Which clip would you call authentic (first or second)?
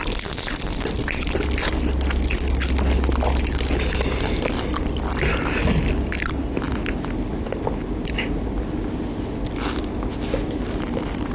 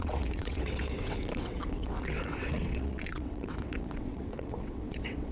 first